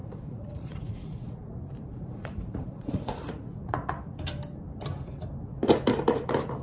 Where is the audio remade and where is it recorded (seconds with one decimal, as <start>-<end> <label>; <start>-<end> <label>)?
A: 0.0-1.3 remade; 1.3-1.9 recorded; 1.9-3.9 remade; 3.9-6.6 recorded